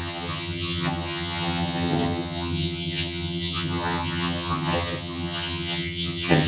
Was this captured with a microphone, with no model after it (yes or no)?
no